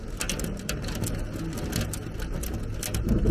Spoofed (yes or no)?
no